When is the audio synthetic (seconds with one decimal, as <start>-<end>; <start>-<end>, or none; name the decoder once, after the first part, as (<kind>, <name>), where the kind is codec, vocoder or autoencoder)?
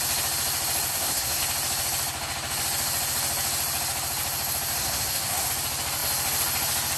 0.9-1.4 (codec, SNAC); 4.8-5.5